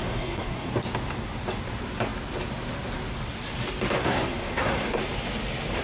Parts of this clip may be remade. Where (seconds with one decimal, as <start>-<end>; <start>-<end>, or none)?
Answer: 0.0-0.7; 4.0-5.0